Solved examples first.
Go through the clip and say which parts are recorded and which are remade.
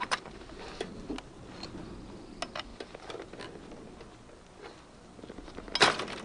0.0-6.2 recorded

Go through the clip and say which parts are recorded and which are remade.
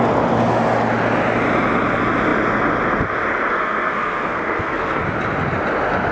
0.0-3.5 recorded; 3.5-5.0 remade; 5.0-6.1 recorded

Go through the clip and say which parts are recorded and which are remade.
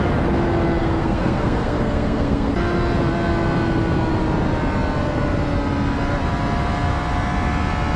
0.0-0.8 recorded; 0.8-2.5 remade; 2.5-8.0 recorded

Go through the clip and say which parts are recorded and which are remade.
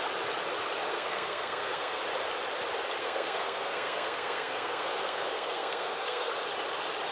0.0-0.9 recorded; 0.9-2.0 remade; 2.0-3.0 recorded; 3.0-6.3 remade; 6.3-7.1 recorded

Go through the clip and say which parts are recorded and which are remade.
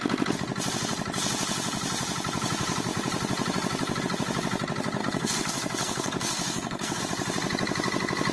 0.0-5.0 recorded; 5.0-7.0 remade; 7.0-8.3 recorded